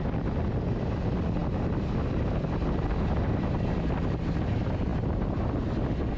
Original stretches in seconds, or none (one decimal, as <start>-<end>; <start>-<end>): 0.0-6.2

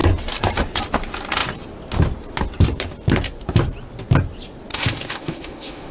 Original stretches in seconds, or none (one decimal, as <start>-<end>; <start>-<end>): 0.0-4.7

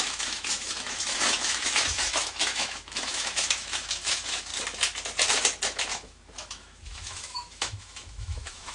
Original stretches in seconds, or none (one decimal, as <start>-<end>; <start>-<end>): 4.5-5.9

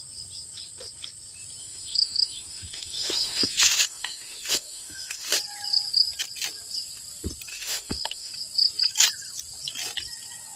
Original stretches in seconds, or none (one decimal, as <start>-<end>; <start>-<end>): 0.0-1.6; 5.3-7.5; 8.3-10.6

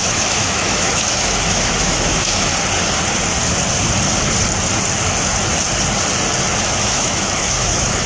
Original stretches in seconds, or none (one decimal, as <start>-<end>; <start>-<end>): 2.5-6.6

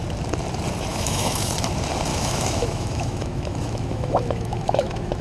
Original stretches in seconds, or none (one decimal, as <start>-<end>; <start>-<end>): 0.0-0.9; 1.5-2.1

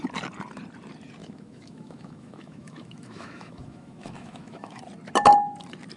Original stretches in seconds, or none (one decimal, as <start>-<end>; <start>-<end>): 0.0-1.2; 4.8-6.0